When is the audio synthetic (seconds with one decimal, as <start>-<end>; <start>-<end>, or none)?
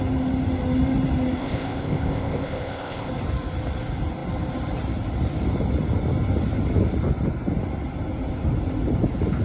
1.4-3.1